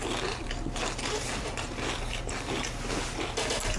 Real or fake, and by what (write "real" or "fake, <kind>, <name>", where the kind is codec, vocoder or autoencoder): real